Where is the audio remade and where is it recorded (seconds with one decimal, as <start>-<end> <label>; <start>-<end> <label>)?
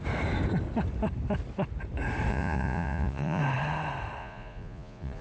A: 0.0-2.3 recorded; 2.3-3.4 remade; 3.4-4.2 recorded; 4.2-5.2 remade